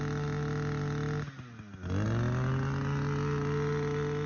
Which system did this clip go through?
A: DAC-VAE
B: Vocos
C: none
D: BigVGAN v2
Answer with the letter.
C